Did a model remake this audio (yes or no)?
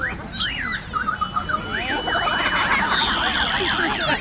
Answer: no